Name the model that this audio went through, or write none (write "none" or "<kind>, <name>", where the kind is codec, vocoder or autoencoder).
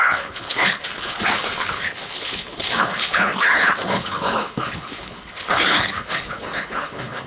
codec, HILCodec